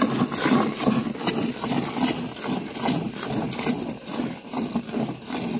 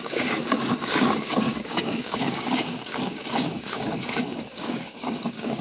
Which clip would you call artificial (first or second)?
second